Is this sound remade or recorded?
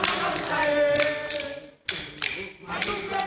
recorded